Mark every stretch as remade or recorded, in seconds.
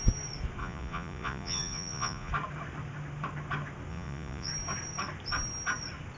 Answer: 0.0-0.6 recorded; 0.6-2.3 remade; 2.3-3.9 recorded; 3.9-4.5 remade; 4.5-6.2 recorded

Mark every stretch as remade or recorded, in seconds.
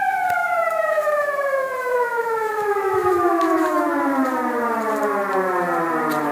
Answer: 0.0-0.4 recorded; 0.4-3.9 remade; 3.9-6.3 recorded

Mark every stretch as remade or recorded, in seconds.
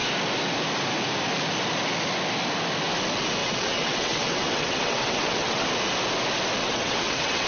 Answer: 0.0-3.4 recorded; 3.4-5.7 remade; 5.7-6.6 recorded; 6.6-7.5 remade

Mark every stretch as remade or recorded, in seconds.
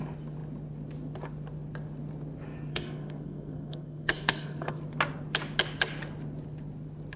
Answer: 0.0-2.7 recorded; 2.7-4.8 remade; 4.8-7.2 recorded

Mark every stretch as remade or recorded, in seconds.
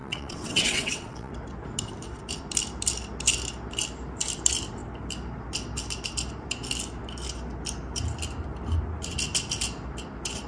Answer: 0.0-1.3 remade; 1.3-10.5 recorded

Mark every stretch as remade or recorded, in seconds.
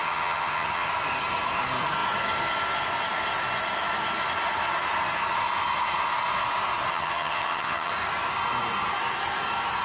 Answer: 0.0-0.9 remade; 0.9-6.9 recorded; 6.9-7.9 remade; 7.9-9.8 recorded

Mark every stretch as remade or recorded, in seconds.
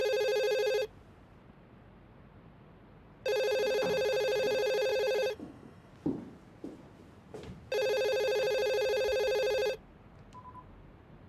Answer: 0.0-4.9 recorded; 4.9-5.9 remade; 5.9-11.3 recorded